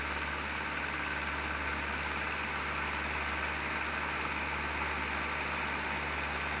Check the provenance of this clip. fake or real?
real